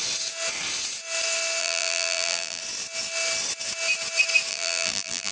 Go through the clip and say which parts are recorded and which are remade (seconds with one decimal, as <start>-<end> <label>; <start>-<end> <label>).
0.0-1.6 recorded; 1.6-2.6 remade; 2.6-4.5 recorded; 4.5-5.3 remade